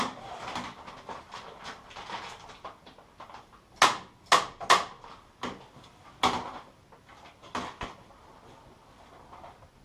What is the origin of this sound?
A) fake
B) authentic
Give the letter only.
B